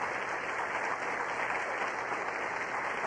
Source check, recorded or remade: recorded